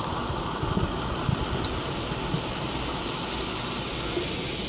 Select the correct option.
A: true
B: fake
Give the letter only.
A